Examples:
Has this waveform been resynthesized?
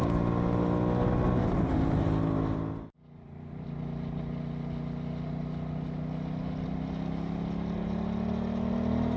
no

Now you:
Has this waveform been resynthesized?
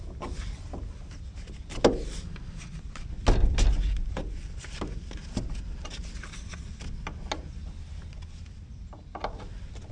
no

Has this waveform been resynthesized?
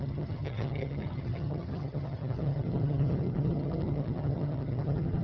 yes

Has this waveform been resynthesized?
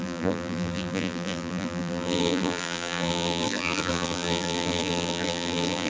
yes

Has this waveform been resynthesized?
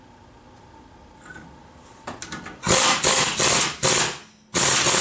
no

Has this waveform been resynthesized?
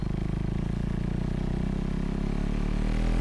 no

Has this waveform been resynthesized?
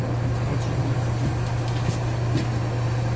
no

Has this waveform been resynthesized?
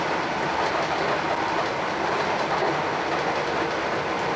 no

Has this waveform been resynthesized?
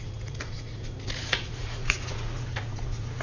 yes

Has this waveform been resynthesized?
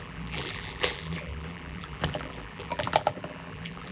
yes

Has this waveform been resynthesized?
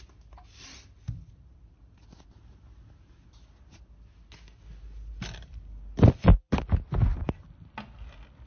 no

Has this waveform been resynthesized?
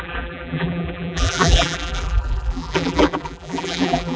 yes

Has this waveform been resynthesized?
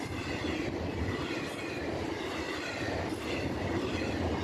no